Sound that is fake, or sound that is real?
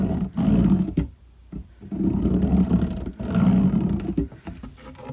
real